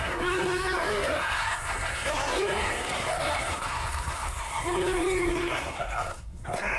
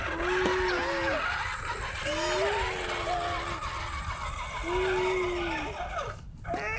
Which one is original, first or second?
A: second